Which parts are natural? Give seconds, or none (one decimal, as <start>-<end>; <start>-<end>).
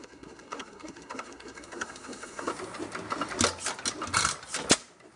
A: 2.5-5.2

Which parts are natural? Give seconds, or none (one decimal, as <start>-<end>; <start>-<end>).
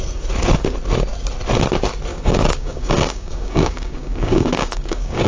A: 0.0-2.1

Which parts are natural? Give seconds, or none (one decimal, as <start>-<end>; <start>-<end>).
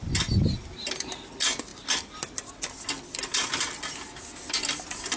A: 0.0-5.2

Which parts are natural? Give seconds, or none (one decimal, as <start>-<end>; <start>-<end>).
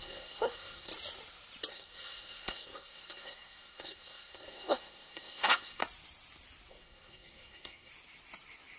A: 0.9-1.7; 5.8-6.7; 7.9-8.8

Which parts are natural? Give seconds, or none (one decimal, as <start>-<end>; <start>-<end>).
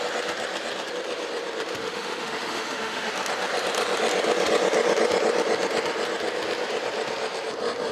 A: 0.0-1.8; 3.1-7.9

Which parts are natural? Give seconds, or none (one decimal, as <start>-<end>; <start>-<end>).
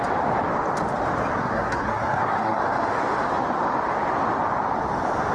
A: 0.0-1.4; 2.6-5.3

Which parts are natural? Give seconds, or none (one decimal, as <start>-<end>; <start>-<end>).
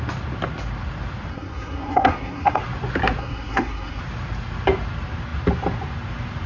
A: 0.0-1.3; 2.6-3.2; 4.0-6.5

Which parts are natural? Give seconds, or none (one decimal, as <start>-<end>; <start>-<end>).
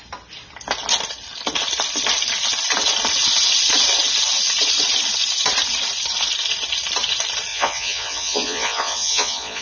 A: 0.0-7.5